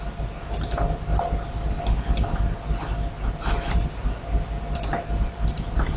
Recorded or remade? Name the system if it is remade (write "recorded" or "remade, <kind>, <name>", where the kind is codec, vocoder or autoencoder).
recorded